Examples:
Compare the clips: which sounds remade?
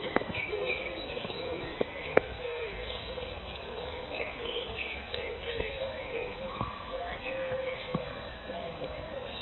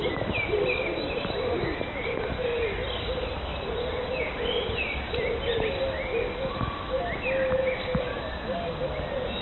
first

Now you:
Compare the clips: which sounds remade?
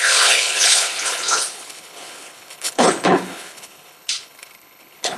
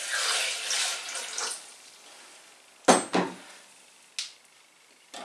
first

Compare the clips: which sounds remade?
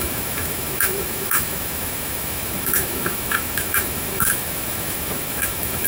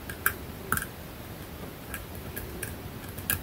first